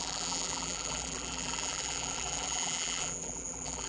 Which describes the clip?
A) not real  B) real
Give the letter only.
A